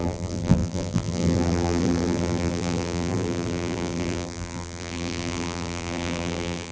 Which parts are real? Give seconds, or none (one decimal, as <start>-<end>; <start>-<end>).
none